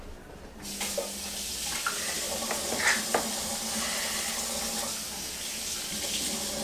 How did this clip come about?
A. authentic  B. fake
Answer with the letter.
A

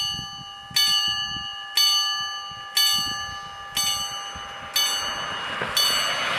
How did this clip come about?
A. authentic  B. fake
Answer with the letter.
A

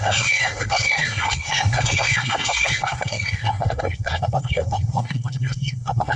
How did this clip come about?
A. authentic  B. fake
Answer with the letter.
B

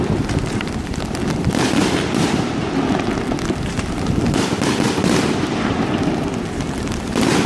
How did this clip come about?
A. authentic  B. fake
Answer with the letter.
B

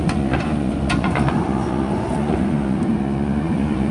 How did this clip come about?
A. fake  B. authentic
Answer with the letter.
A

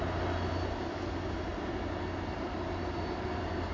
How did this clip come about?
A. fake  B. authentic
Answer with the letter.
B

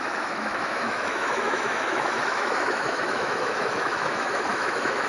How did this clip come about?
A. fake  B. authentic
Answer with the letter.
A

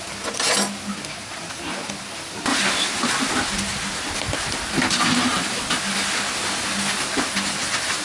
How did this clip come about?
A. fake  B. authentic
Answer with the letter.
B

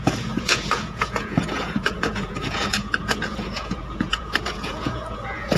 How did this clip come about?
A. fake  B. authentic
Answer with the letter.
A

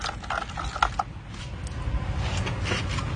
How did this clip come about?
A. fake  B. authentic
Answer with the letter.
B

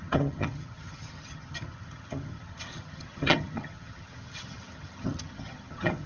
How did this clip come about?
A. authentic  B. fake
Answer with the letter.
B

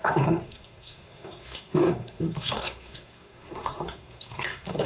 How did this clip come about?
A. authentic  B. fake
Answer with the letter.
B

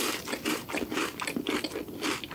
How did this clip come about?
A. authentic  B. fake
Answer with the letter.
B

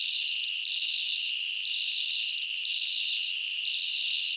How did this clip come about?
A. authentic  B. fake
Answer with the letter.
A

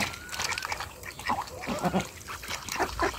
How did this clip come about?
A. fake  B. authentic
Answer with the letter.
B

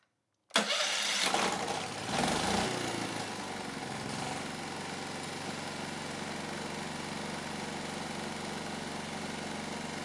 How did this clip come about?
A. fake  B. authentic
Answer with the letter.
B